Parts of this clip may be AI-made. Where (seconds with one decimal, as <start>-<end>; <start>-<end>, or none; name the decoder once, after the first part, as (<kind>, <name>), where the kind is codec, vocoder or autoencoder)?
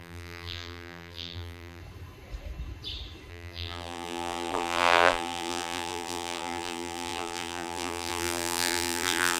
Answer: 0.0-1.8 (vocoder, BigVGAN v2); 3.3-9.4